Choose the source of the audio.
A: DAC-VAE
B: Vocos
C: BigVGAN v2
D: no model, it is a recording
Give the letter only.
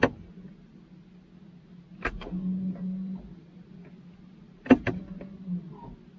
D